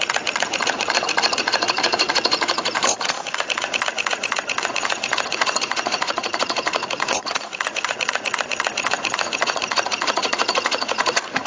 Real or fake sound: fake